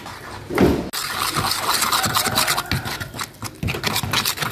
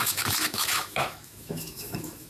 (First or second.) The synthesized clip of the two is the second